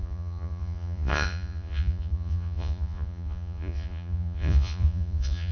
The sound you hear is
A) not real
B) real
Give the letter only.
A